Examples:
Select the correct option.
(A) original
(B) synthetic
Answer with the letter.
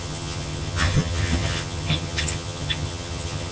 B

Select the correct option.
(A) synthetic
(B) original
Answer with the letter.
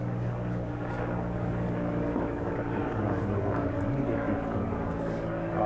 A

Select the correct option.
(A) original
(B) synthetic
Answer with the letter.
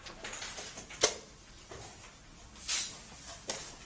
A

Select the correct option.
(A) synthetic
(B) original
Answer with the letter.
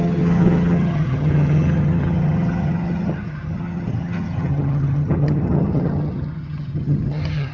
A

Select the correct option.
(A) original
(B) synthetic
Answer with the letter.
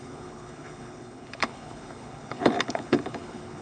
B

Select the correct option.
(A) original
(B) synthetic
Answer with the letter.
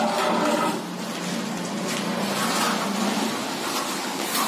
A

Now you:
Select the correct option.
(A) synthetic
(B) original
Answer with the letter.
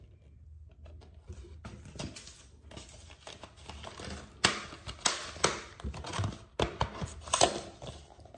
B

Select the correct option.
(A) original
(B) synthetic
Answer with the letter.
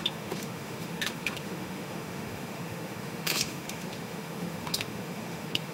B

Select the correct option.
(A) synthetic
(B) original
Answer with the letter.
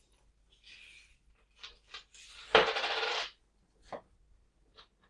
B